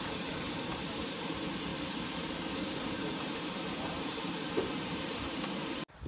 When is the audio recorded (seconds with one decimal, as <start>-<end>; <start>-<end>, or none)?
1.7-2.9